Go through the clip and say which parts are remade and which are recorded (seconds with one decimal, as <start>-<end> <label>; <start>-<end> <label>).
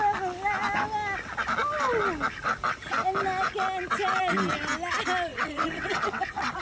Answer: 0.0-5.3 recorded; 5.3-6.6 remade